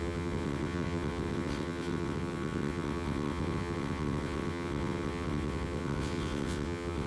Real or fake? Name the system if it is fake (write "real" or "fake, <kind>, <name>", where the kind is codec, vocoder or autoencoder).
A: fake, vocoder, WaveNeXt